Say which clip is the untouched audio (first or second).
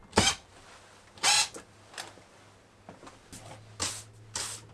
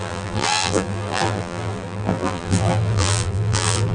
first